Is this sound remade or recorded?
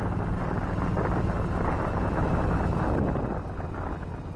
recorded